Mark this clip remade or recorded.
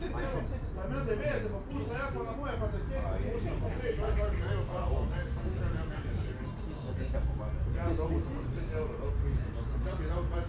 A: recorded